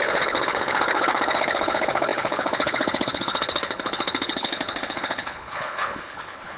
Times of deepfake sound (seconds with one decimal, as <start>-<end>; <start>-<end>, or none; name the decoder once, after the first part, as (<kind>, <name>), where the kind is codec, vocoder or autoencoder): 0.0-6.6 (codec, HILCodec)